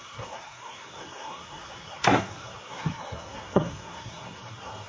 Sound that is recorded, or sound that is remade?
remade